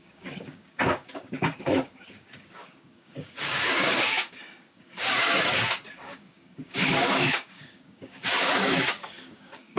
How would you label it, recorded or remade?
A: remade